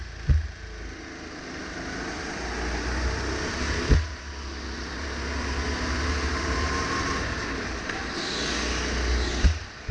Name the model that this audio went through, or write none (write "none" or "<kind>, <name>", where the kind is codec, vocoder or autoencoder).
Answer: none